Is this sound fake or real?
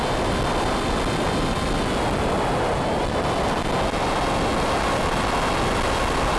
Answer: real